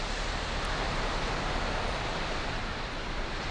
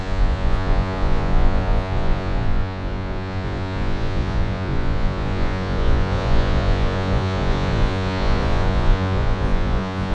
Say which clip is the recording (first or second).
first